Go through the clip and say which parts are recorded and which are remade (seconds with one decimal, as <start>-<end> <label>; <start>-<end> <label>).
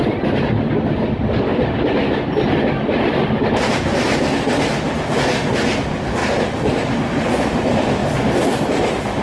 0.0-1.5 recorded; 1.5-2.7 remade; 2.7-3.2 recorded; 3.2-3.8 remade; 3.8-6.2 recorded; 6.2-7.3 remade; 7.3-9.2 recorded